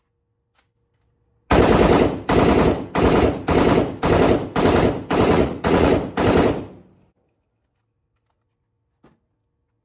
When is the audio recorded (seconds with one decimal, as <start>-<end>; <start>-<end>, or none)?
0.0-5.3; 5.9-9.8

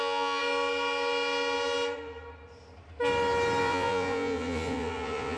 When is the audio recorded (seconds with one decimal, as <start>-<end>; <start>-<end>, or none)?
0.4-3.6

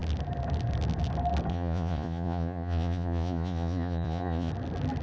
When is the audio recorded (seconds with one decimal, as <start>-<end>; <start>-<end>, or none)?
0.0-1.5; 4.5-5.0

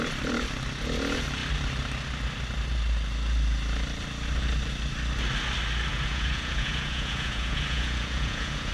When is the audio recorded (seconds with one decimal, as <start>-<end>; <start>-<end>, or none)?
0.0-5.9

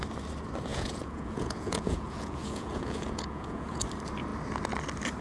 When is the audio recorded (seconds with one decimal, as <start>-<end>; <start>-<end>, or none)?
0.0-0.7; 3.8-5.2

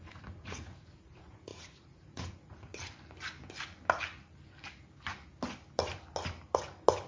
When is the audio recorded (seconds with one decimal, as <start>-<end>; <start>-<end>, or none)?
2.7-7.1

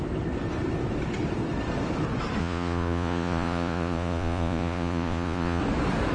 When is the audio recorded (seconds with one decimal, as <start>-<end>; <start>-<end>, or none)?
0.0-2.4; 5.6-6.1